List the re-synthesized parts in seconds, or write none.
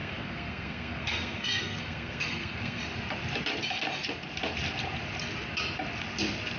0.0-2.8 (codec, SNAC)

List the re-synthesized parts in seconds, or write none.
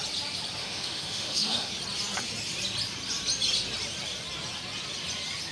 0.6-1.7 (autoencoder, DAC-VAE)